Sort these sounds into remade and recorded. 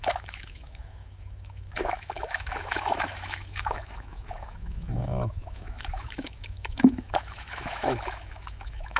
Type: remade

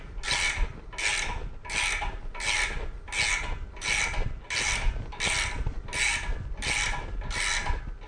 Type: recorded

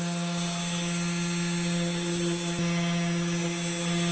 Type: recorded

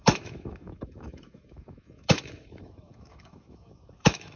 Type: remade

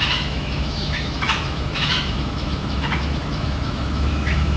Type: remade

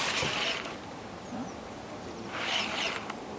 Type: recorded